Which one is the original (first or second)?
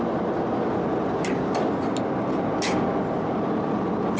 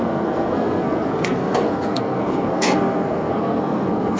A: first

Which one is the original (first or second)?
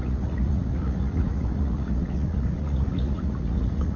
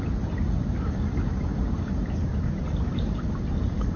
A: second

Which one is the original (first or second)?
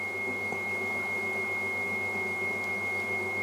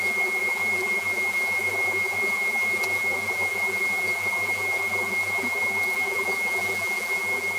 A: first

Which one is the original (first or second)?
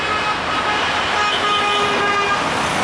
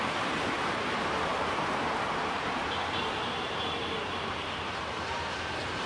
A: first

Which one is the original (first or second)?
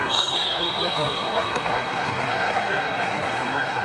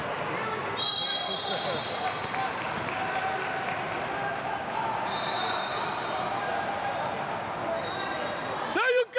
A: second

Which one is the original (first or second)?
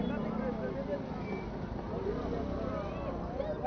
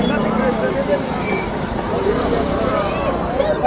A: first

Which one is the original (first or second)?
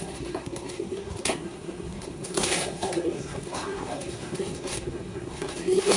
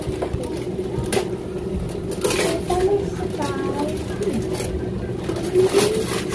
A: second